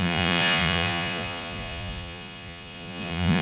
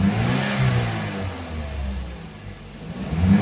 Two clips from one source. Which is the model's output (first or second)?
first